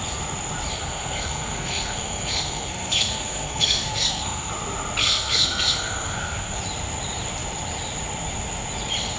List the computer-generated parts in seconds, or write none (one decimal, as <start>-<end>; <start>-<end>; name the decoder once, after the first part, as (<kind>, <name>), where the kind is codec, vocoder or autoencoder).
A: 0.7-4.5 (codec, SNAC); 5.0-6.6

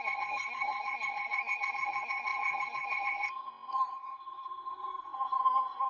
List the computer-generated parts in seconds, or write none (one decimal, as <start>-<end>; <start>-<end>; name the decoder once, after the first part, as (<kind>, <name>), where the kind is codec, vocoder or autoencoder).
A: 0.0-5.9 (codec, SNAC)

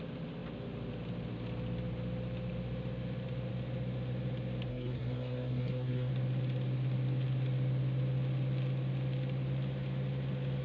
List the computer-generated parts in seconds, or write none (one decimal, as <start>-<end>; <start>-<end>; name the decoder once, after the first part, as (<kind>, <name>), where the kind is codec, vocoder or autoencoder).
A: 4.7-6.1 (codec, SNAC)